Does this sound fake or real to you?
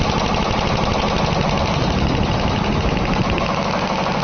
real